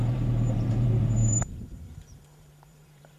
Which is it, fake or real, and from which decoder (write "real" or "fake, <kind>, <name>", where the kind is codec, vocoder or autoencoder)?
fake, vocoder, BigVGAN v2